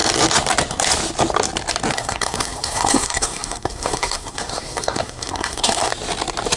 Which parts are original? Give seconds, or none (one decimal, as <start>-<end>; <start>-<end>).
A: 0.0-1.9; 5.9-6.6